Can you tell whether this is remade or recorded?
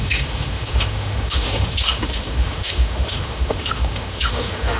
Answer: remade